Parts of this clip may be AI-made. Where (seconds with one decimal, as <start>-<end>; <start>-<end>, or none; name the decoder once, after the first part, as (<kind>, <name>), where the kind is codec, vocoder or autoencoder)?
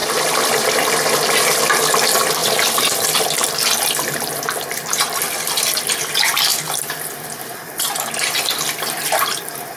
0.0-1.6 (vocoder, BigVGAN v2); 2.4-3.5; 6.5-9.4